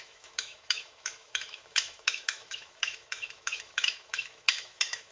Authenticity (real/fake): fake